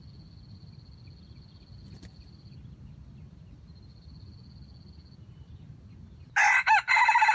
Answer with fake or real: real